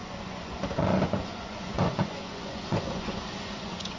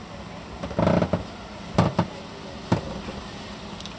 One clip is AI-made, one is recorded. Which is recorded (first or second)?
second